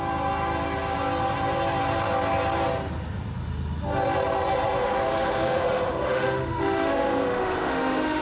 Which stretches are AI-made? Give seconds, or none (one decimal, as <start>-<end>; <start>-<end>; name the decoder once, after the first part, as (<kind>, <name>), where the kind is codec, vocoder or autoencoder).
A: 4.8-8.2 (autoencoder, DAC-VAE)